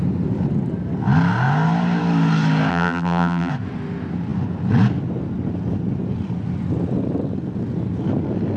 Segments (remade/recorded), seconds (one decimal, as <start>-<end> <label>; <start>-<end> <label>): 0.0-2.7 recorded; 2.7-3.5 remade; 3.5-8.6 recorded